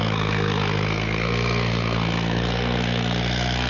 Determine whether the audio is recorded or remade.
remade